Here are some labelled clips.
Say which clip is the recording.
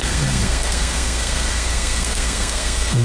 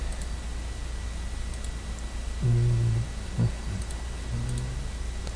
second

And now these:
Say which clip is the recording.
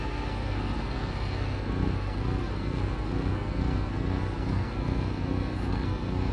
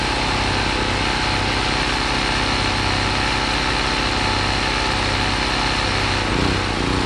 second